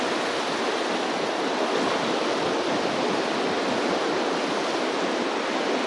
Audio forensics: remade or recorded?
recorded